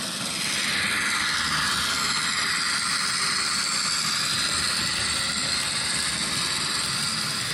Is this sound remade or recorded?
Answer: recorded